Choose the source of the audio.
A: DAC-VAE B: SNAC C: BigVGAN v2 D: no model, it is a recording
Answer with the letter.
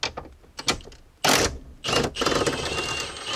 D